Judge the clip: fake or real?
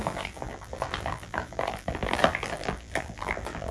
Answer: fake